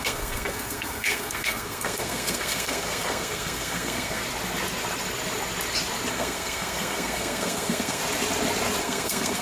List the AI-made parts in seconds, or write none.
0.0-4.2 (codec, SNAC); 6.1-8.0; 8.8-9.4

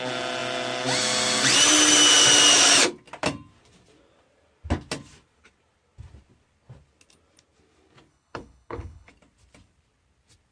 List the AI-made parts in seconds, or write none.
8.1-9.1 (codec, HILCodec)

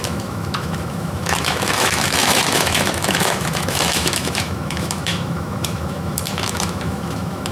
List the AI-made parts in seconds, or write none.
0.0-7.5 (autoencoder, DAC-VAE)

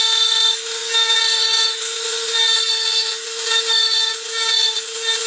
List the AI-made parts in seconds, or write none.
none